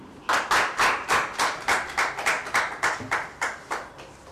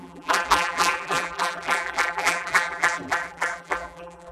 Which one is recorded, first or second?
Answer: first